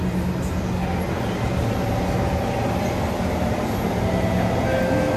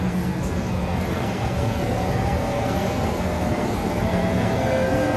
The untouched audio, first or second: first